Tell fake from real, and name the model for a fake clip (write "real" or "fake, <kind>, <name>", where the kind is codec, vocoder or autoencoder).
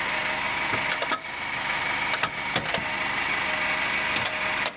real